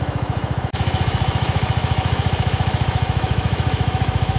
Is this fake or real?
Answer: fake